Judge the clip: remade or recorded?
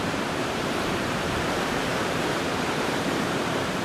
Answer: remade